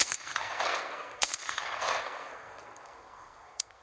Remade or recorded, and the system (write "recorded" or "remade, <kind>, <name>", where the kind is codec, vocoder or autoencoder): remade, codec, SNAC